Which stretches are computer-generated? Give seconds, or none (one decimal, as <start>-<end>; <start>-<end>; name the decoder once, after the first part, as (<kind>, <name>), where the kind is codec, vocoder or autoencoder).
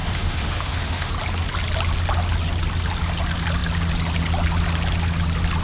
0.0-1.1 (autoencoder, DAC-VAE)